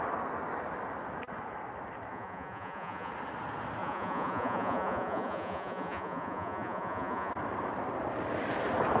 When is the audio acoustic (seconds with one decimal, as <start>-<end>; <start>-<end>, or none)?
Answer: 0.0-2.1; 3.1-3.8; 7.3-9.0